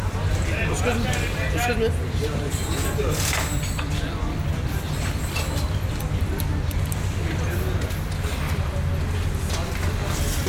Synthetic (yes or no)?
no